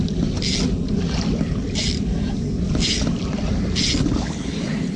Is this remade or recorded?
remade